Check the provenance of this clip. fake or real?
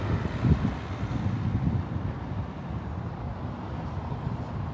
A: real